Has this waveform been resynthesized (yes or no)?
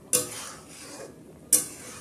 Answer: no